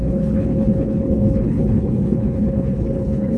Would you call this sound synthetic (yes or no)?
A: yes